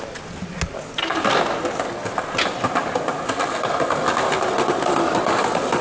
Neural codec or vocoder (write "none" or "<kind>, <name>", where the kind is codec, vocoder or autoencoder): none